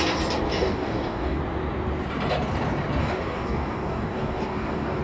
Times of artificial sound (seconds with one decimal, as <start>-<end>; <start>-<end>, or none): 0.5-1.4; 3.0-5.0